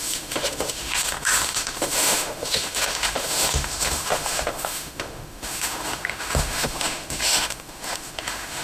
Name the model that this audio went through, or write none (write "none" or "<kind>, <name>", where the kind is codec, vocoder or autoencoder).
autoencoder, DAC-VAE